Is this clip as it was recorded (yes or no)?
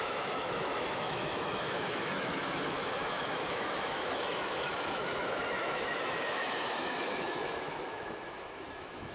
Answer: no